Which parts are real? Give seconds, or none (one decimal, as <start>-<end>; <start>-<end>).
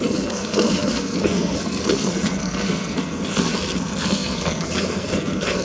none